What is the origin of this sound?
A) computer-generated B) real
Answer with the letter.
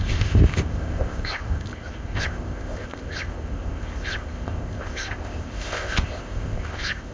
A